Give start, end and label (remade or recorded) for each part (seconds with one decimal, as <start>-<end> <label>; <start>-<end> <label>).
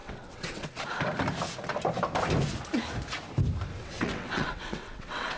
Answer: 0.0-0.8 remade; 0.8-3.8 recorded; 3.8-5.4 remade